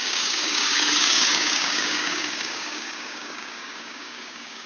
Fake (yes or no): yes